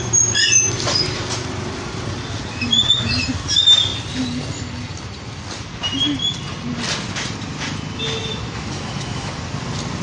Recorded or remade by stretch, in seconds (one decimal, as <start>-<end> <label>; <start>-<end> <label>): 0.0-8.2 recorded; 8.2-9.4 remade; 9.4-10.0 recorded